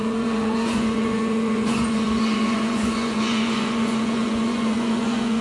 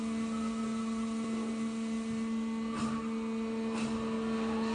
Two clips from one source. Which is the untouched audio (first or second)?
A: second